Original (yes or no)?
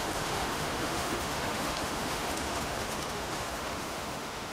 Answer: no